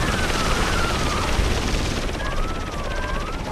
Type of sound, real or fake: real